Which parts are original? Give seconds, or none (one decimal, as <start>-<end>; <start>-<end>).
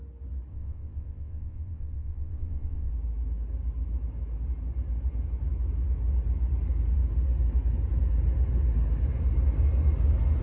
0.0-0.5; 2.9-10.4